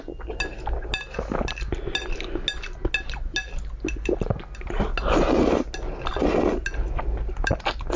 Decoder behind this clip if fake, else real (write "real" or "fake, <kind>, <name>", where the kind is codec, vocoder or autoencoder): real